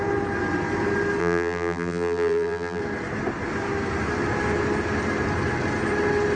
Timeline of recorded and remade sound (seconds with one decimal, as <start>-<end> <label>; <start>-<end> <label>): 0.0-1.2 recorded; 1.2-2.8 remade; 2.8-6.4 recorded